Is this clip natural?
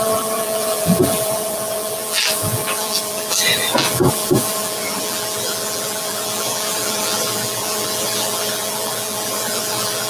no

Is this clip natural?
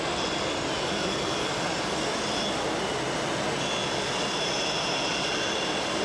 yes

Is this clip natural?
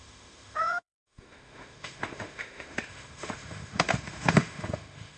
no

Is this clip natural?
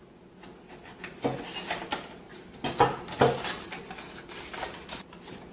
yes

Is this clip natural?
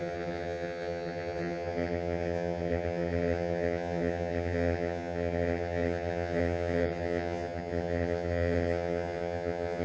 no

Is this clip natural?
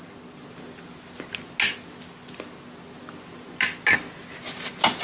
yes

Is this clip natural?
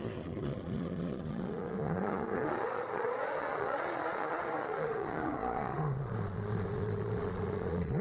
no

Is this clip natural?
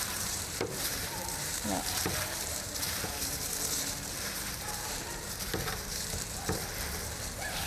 no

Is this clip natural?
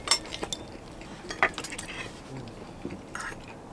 yes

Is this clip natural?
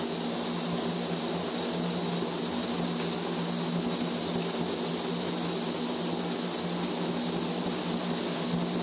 yes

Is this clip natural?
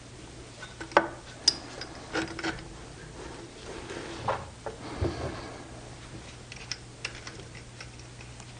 yes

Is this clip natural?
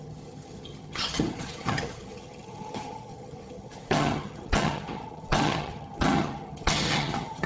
no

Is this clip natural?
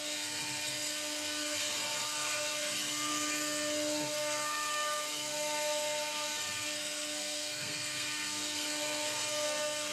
no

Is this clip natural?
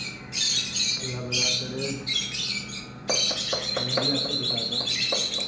yes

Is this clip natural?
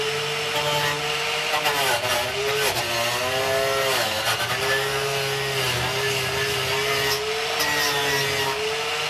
yes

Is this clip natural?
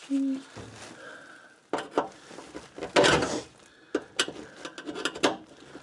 yes